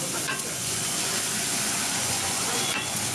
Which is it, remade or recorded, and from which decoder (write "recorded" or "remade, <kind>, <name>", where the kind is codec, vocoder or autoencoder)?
remade, vocoder, Vocos